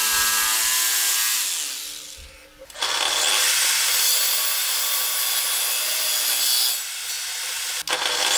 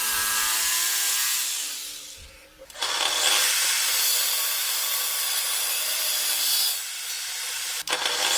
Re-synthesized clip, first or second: second